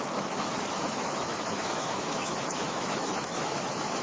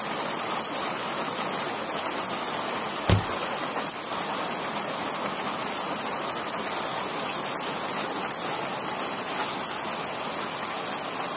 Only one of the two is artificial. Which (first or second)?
first